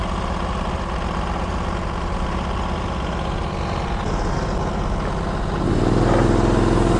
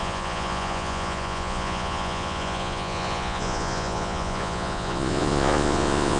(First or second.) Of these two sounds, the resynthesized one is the second